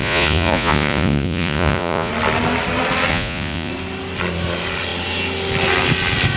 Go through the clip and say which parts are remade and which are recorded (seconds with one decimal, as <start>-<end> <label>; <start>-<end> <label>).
0.0-2.1 remade; 2.1-3.1 recorded; 3.1-3.7 remade; 3.7-6.4 recorded